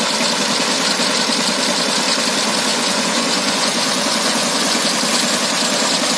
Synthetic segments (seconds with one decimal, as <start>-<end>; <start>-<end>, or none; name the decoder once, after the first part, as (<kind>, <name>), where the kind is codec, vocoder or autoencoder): 2.7-4.9 (vocoder, Vocos)